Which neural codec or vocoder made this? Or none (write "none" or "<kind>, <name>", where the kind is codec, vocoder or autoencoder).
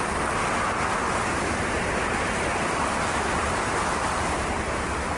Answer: none